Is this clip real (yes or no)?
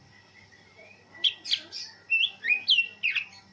yes